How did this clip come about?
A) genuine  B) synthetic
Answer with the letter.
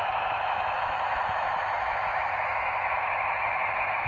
B